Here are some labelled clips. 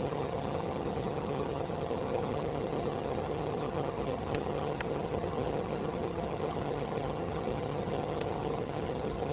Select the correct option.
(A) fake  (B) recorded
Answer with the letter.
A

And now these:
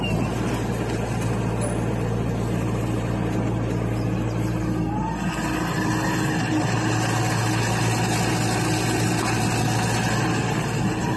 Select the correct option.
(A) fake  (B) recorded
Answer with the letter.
B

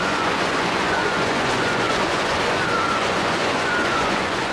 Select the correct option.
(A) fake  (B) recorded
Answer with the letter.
A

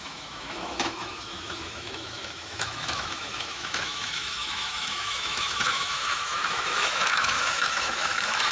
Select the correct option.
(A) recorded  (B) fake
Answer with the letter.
B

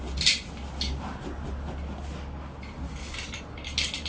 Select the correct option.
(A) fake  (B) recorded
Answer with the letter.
B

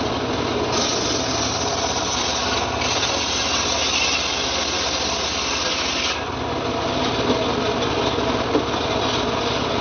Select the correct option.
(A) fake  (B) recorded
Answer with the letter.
B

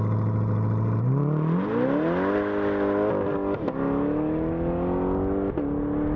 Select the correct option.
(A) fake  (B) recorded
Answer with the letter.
B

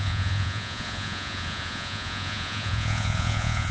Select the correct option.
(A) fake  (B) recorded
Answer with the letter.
A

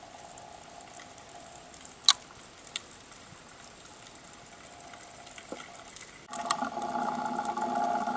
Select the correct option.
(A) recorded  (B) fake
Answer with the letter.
A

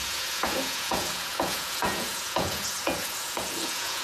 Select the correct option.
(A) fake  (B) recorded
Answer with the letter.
A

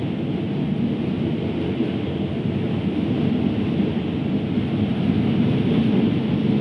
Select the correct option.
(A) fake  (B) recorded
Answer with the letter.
B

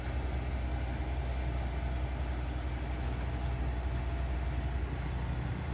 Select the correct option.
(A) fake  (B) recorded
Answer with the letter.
B